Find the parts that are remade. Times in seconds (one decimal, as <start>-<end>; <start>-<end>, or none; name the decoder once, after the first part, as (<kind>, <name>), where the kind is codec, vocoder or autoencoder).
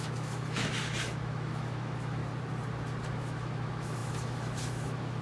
0.0-2.2 (autoencoder, DAC-VAE); 3.1-5.2